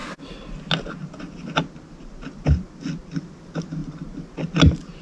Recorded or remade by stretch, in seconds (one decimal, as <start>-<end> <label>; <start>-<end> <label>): 0.0-5.0 recorded